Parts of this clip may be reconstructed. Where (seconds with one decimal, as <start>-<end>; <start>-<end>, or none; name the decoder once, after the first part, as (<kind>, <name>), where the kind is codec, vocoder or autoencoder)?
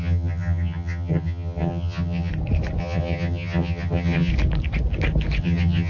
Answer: 0.0-2.3 (vocoder, HiFi-GAN); 2.8-4.3; 5.4-5.9